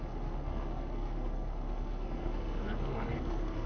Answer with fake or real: fake